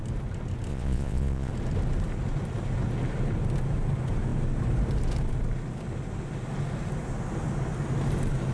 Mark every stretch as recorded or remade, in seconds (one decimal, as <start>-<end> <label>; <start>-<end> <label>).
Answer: 0.0-0.7 recorded; 0.7-1.5 remade; 1.5-8.5 recorded